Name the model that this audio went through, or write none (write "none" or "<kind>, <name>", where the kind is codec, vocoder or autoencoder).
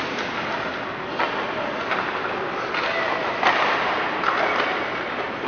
none